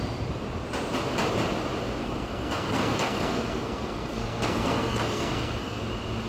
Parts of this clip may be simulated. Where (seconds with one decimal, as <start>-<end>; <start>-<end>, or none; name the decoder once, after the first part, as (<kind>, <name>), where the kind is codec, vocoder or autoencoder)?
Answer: 2.0-5.8 (codec, SNAC)

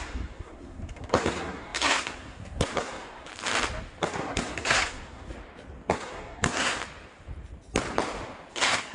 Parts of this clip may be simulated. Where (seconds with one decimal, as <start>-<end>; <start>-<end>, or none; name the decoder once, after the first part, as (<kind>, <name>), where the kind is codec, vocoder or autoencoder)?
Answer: 0.0-3.3 (codec, SNAC); 4.0-5.3; 5.9-6.8; 8.5-8.9

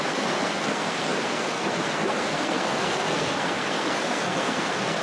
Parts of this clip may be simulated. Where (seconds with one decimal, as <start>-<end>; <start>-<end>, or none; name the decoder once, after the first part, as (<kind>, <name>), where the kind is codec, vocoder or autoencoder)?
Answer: 0.0-5.0 (codec, SNAC)

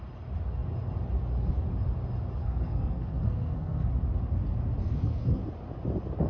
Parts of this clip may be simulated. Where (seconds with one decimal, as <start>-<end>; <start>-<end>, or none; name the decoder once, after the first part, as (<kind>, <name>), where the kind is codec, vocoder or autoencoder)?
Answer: 2.4-3.9 (codec, SNAC); 4.8-5.4

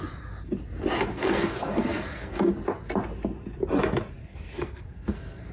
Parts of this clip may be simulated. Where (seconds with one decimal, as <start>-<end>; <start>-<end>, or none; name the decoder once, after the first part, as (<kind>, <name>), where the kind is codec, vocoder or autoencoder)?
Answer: 1.1-2.5 (codec, SNAC); 4.2-5.5

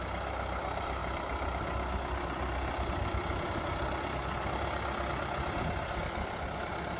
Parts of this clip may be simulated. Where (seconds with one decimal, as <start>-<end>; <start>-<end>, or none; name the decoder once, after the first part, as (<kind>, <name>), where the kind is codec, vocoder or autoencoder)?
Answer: none

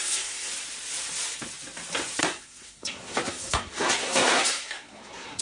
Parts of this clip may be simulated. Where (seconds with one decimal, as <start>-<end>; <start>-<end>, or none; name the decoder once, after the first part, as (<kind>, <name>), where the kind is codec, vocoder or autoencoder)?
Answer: 0.0-0.5 (codec, SNAC); 2.2-5.4

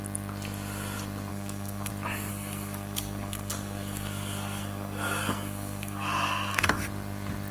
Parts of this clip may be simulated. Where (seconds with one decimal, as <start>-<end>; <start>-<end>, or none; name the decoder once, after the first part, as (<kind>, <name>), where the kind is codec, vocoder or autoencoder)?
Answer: 1.3-1.9 (codec, SNAC); 2.3-6.8